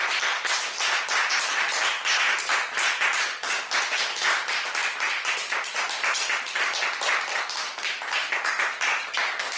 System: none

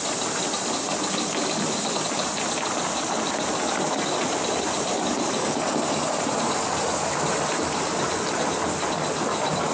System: none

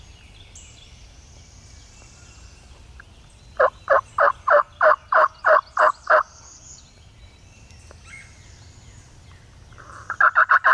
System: none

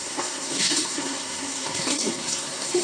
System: codec, SNAC